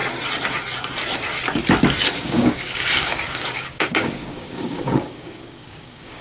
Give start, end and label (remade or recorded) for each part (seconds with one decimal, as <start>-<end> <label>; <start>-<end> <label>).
0.0-2.1 recorded; 2.1-6.2 remade